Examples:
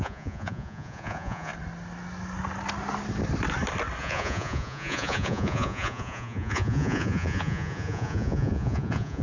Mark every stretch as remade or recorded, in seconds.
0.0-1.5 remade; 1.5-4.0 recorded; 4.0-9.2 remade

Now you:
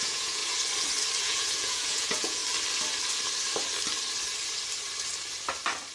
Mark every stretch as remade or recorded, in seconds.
0.0-0.4 remade; 0.4-1.2 recorded; 1.2-2.4 remade; 2.4-5.9 recorded

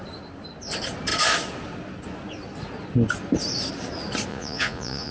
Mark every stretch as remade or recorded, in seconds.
0.0-4.3 recorded; 4.3-5.1 remade

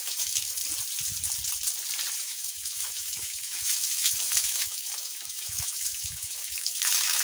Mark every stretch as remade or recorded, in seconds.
0.0-0.6 remade; 0.6-2.2 recorded; 2.2-7.2 remade